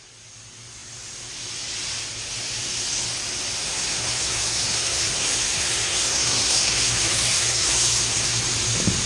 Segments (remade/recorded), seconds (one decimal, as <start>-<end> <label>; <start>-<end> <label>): 0.0-3.6 recorded; 3.6-8.4 remade; 8.4-9.1 recorded